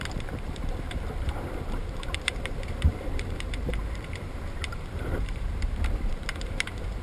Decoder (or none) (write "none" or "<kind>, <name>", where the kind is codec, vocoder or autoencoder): vocoder, BigVGAN v2